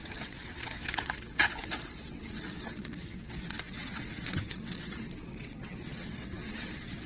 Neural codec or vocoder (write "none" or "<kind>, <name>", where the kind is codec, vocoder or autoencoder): vocoder, WaveNeXt